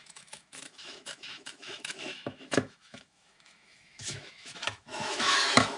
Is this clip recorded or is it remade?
remade